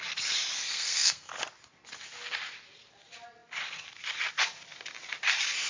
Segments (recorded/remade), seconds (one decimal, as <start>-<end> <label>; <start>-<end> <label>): 0.0-0.6 recorded; 0.6-1.3 remade; 1.3-5.7 recorded